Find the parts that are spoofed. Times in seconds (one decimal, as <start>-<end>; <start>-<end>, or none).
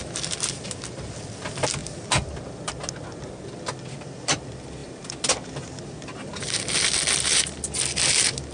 none